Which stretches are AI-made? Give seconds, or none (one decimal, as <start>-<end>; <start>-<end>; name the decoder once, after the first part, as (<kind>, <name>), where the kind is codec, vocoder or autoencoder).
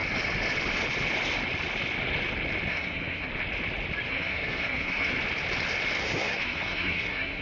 2.7-3.3 (codec, SNAC); 4.1-5.1; 6.0-7.4